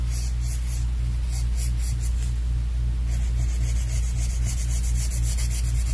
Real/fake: real